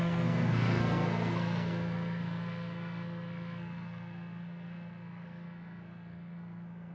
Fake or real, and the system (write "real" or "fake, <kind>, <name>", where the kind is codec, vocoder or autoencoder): fake, codec, SNAC